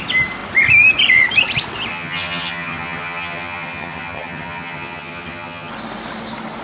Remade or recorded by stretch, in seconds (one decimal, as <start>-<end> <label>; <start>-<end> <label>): 0.0-1.9 recorded; 1.9-5.7 remade; 5.7-6.6 recorded